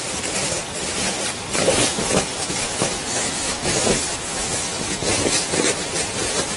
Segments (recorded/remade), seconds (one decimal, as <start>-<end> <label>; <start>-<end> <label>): 0.0-1.6 recorded; 1.6-5.5 remade; 5.5-6.6 recorded